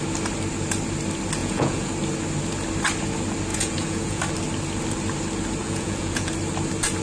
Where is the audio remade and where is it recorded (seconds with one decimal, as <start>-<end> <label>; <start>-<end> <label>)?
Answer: 0.0-1.4 recorded; 1.4-1.9 remade; 1.9-3.5 recorded; 3.5-4.2 remade; 4.2-5.6 recorded; 5.6-6.3 remade; 6.3-7.0 recorded